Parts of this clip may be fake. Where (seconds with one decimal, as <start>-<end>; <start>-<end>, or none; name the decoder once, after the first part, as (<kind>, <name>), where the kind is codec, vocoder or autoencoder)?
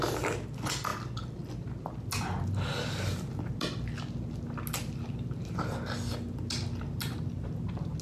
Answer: none